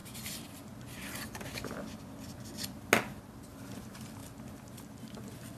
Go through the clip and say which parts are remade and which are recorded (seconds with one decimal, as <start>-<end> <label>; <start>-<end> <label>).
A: 0.0-5.6 recorded